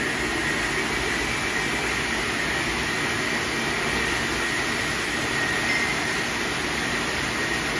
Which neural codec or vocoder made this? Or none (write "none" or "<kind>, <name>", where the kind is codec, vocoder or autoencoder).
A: none